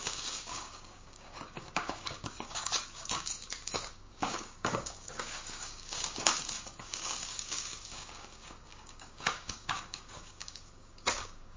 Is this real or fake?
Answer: fake